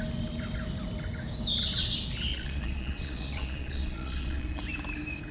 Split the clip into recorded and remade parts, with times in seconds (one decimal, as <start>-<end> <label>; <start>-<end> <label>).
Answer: 0.0-2.3 recorded; 2.3-4.6 remade; 4.6-5.3 recorded